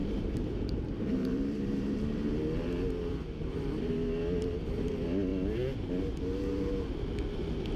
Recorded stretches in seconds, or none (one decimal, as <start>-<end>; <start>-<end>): 2.3-7.8